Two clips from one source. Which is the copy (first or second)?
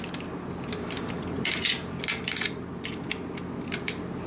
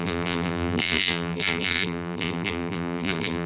second